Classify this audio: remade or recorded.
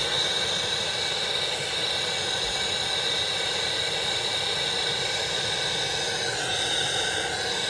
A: recorded